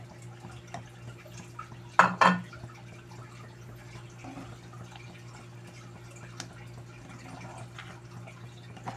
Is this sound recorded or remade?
recorded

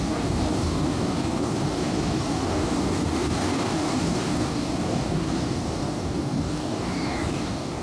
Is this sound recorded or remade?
remade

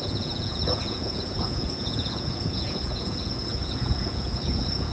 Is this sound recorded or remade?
remade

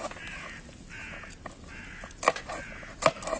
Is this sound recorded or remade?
recorded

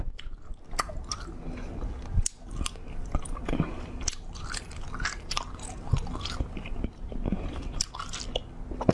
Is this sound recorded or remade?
recorded